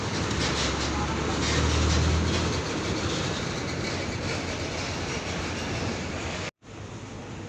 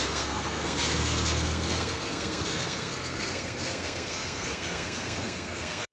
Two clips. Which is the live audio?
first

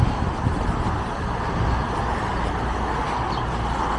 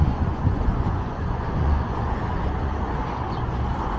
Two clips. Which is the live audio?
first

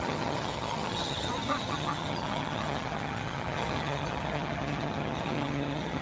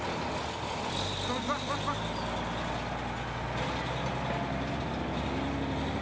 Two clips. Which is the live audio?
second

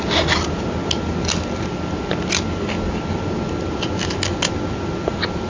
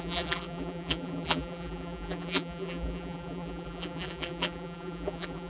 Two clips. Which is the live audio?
first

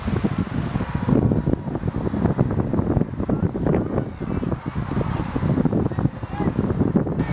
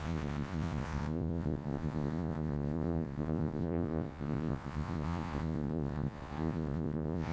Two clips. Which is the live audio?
first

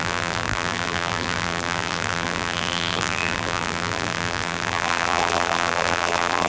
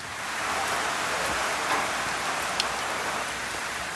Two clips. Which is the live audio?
second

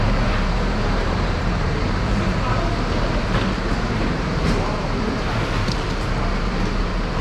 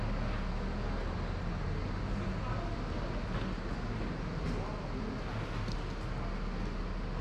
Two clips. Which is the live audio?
second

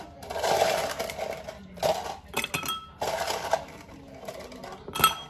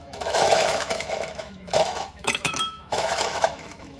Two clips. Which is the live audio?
first